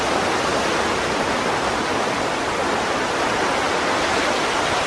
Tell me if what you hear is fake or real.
real